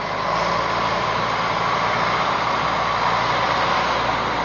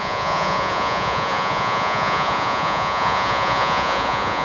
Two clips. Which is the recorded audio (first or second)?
first